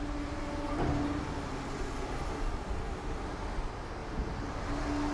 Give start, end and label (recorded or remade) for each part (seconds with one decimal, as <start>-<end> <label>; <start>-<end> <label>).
0.0-5.1 recorded